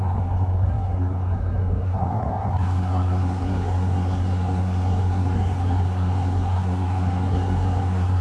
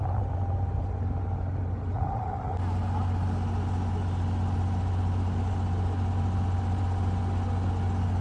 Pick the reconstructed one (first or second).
first